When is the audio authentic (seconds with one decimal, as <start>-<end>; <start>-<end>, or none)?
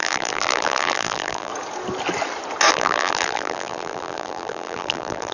1.5-2.7